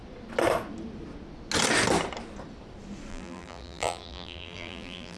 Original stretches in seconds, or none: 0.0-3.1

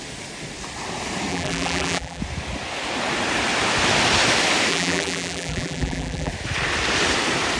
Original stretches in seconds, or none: 0.0-1.3; 2.2-4.7; 6.3-7.6

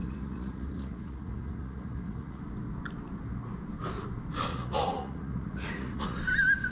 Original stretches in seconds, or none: 2.4-4.5; 6.2-6.7

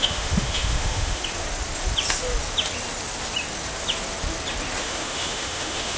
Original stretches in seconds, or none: 1.2-4.8

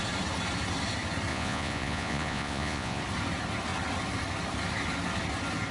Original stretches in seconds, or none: 0.0-1.3; 3.0-5.7